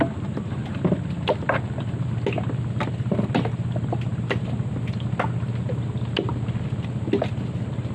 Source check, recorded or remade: recorded